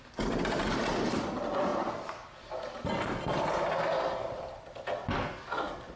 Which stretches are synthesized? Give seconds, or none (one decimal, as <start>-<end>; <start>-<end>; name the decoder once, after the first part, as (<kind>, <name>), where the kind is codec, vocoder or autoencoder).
none